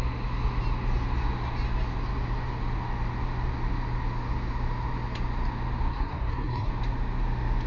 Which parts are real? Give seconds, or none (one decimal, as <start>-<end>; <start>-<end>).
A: 0.0-5.9; 6.7-7.7